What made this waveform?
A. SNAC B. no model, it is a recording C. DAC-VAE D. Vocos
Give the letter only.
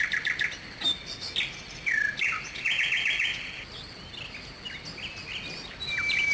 B